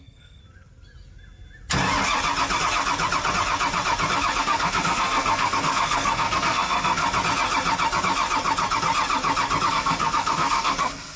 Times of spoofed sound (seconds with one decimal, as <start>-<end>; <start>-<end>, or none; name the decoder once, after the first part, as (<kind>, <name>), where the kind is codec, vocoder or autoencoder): 0.0-0.4 (codec, SNAC); 4.4-7.0; 9.7-11.2

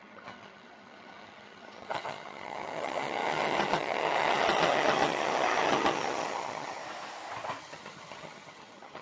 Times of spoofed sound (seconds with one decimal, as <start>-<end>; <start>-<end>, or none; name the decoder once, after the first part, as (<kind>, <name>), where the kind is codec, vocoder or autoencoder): 0.0-6.8 (vocoder, HiFi-GAN); 7.6-9.0

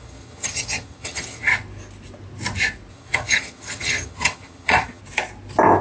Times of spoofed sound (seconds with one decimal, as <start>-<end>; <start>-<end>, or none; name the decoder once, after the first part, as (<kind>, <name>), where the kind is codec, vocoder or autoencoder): 0.0-1.5 (vocoder, HiFi-GAN); 2.9-5.0

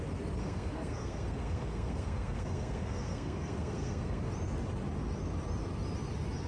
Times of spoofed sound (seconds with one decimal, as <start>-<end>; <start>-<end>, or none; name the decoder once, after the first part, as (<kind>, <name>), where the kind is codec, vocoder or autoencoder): 0.4-4.3 (codec, SNAC)